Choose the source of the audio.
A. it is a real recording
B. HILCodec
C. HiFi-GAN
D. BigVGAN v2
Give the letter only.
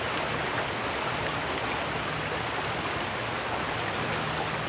A